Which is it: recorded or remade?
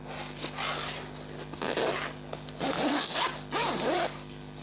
recorded